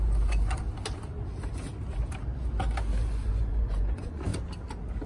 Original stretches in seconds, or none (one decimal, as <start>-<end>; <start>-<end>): 0.6-3.0; 4.3-5.1